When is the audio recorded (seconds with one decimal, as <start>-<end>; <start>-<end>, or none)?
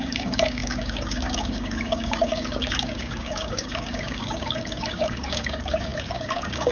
none